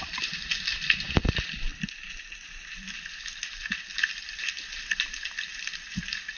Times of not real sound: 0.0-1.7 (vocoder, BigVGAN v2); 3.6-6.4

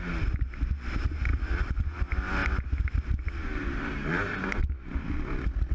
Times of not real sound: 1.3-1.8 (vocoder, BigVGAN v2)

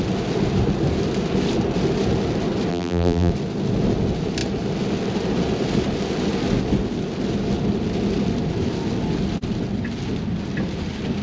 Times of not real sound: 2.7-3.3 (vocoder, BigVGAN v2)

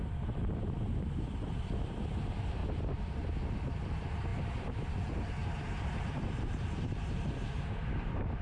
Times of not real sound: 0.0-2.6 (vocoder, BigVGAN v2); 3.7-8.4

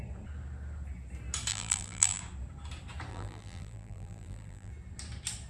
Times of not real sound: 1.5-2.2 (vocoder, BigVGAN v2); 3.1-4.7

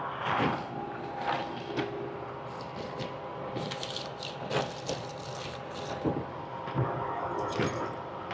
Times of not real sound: none

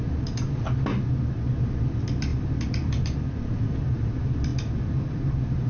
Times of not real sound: 0.0-0.9 (vocoder, BigVGAN v2); 1.5-5.7